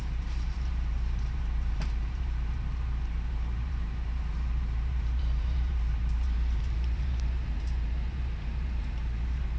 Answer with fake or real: fake